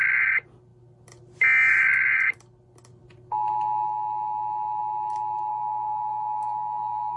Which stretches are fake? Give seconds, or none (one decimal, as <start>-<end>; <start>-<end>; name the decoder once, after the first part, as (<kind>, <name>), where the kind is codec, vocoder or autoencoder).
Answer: 5.5-7.2 (codec, SNAC)

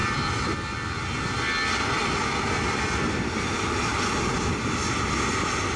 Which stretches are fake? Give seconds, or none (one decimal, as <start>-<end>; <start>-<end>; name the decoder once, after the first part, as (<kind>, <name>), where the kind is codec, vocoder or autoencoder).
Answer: none

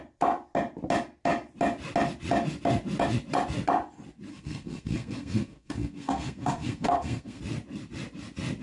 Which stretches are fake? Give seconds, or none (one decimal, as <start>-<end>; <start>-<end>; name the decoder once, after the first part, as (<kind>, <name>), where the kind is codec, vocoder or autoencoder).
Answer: 4.3-7.4 (codec, SNAC)

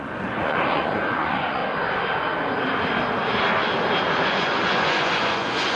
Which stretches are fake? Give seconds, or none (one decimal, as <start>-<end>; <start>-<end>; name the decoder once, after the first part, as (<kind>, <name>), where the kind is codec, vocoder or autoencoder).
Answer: 0.0-1.6 (vocoder, Vocos); 4.0-5.8

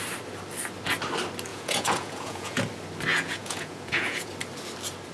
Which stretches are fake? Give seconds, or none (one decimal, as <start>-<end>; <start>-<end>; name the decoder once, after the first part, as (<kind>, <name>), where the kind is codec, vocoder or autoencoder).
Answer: 1.5-2.6 (vocoder, Vocos); 3.1-4.3

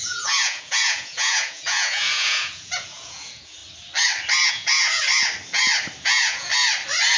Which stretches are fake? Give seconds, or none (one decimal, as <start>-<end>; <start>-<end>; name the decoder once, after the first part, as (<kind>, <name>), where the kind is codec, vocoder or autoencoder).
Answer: 0.0-3.6 (vocoder, Vocos); 4.5-5.1; 6.0-6.5

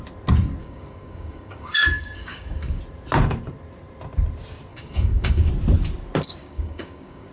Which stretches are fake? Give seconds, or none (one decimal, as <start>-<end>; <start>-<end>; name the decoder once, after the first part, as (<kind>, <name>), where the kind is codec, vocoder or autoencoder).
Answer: 0.6-2.8 (codec, DAC); 4.7-5.5; 6.4-7.3